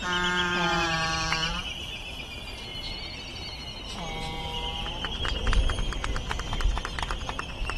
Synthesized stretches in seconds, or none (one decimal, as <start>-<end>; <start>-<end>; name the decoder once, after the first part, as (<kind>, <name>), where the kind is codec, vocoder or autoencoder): 1.5-2.2 (vocoder, Vocos)